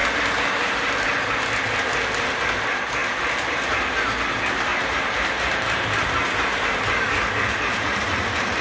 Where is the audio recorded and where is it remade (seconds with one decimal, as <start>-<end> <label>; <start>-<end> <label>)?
0.0-4.7 recorded; 4.7-8.6 remade